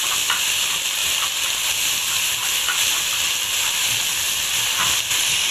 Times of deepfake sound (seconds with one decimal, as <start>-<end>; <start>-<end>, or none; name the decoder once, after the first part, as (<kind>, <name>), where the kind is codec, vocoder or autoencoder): none